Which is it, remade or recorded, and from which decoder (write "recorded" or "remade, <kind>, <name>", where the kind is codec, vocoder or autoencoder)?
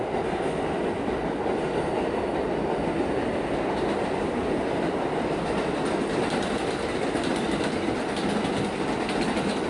recorded